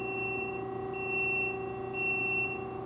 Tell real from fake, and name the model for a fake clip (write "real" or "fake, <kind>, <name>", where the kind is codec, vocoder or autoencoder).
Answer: real